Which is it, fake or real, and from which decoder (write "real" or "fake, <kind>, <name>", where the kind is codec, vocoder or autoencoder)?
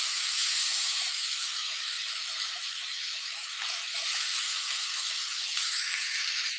fake, autoencoder, DAC-VAE